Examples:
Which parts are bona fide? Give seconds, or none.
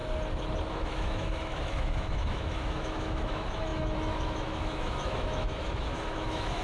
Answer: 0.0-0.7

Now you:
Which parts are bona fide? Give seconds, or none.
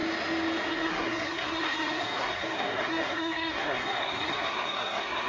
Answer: 0.0-0.7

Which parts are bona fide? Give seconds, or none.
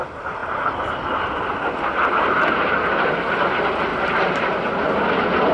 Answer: 0.0-3.9; 5.1-5.5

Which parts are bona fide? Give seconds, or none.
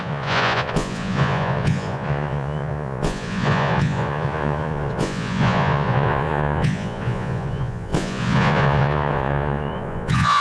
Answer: none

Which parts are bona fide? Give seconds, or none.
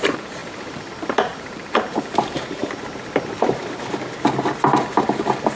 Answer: 2.6-4.6